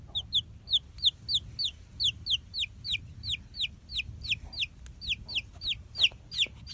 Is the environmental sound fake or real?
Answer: real